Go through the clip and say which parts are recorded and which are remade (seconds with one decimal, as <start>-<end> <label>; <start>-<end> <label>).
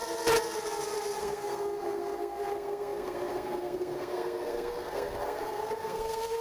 0.0-1.2 recorded; 1.2-6.4 remade